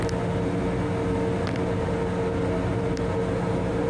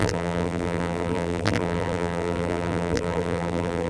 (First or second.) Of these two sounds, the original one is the first